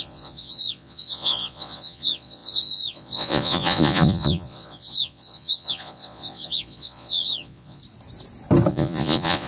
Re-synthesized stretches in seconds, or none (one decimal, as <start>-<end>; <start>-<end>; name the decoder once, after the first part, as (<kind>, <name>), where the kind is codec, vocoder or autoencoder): 0.0-7.8 (vocoder, Vocos); 8.7-9.5